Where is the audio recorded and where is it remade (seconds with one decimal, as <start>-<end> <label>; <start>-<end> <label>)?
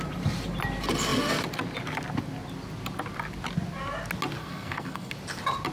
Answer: 0.0-4.4 recorded; 4.4-5.1 remade; 5.1-5.7 recorded